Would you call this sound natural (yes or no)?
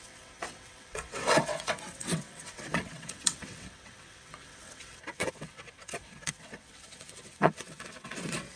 no